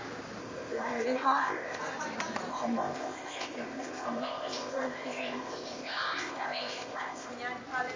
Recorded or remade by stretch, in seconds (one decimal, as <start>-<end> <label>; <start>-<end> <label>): 0.0-0.4 recorded; 0.4-1.8 remade; 1.8-2.5 recorded; 2.5-7.3 remade; 7.3-8.0 recorded